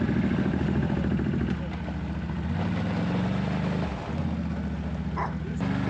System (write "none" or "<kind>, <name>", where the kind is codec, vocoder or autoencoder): none